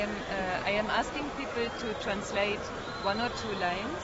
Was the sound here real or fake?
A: real